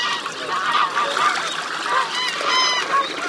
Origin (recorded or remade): recorded